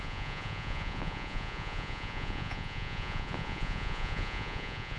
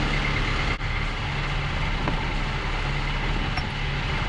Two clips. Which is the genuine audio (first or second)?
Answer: second